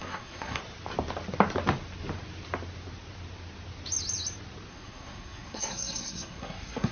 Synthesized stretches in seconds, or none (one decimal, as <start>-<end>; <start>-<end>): 0.0-0.6; 4.7-6.9